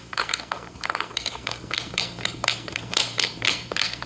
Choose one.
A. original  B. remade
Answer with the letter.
B